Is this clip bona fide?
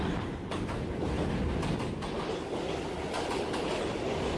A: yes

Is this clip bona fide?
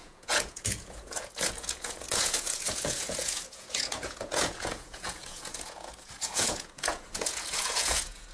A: no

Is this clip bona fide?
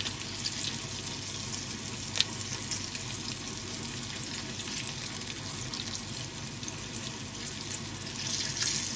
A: yes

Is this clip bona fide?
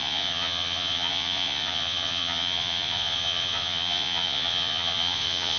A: no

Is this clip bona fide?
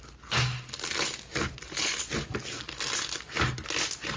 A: yes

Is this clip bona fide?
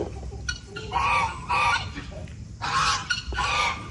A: yes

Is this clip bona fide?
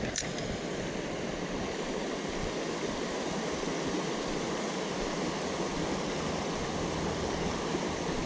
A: yes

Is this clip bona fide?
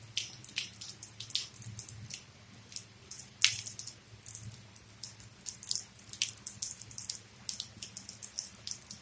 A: yes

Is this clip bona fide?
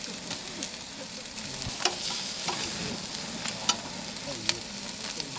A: yes